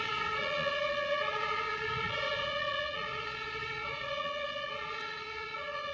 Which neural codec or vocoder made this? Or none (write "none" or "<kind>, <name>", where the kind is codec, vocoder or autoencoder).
vocoder, Vocos